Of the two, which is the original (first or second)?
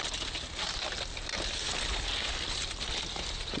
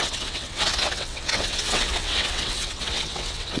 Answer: first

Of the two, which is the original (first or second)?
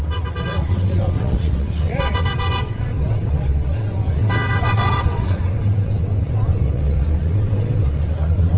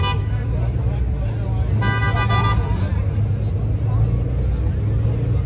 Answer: second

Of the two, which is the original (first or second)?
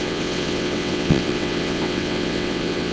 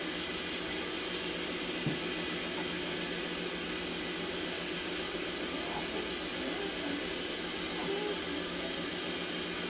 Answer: second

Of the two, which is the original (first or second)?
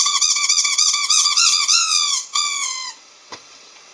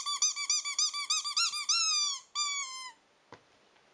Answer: second